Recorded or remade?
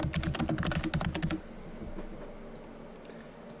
recorded